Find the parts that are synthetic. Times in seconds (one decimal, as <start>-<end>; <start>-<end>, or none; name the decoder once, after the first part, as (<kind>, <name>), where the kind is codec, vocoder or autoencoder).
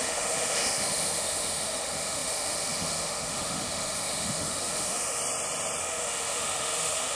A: 0.0-5.2 (autoencoder, DAC-VAE); 5.8-7.2